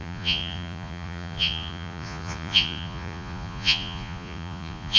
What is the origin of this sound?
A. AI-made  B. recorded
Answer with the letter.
A